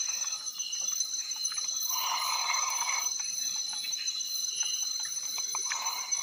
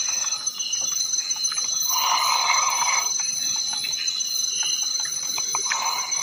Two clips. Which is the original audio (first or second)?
second